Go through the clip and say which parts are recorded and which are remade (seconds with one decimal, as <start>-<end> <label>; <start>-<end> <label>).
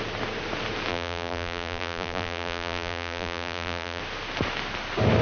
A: 0.0-0.9 recorded; 0.9-4.0 remade; 4.0-5.2 recorded